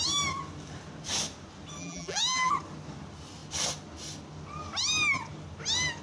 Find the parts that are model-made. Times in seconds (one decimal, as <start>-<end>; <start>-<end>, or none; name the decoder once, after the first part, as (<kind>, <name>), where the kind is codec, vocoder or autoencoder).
1.8-2.5 (vocoder, BigVGAN v2)